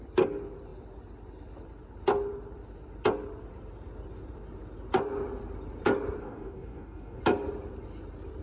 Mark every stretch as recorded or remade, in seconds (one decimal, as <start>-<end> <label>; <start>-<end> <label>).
0.0-6.2 recorded; 6.2-7.2 remade; 7.2-8.4 recorded